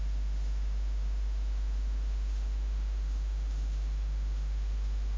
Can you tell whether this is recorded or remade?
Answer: remade